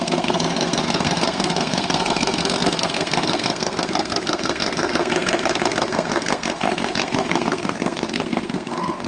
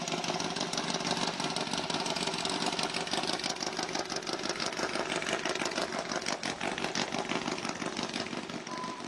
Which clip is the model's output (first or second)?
first